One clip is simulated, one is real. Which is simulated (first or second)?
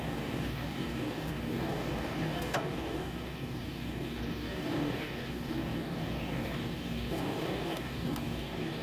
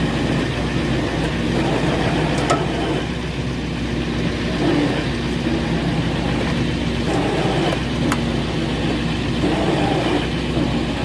first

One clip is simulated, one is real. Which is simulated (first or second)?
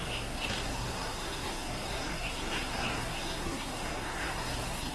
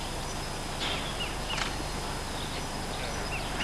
first